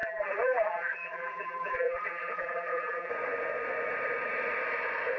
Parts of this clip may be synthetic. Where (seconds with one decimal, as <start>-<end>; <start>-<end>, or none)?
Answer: 0.0-3.1